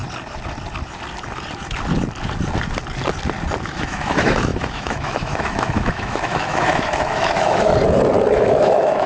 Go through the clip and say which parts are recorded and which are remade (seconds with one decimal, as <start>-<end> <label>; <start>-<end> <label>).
0.0-3.6 recorded; 3.6-7.7 remade; 7.7-8.3 recorded; 8.3-9.1 remade